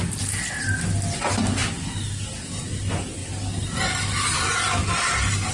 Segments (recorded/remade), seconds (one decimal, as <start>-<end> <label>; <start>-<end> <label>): 0.0-5.5 recorded